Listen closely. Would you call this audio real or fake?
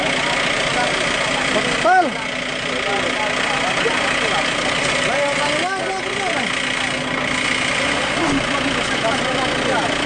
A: real